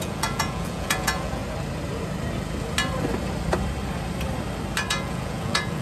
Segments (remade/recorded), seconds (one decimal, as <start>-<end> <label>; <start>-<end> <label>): 0.0-1.4 remade; 1.4-4.9 recorded; 4.9-5.8 remade